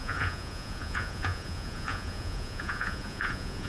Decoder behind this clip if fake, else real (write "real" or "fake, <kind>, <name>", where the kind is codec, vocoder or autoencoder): fake, vocoder, Vocos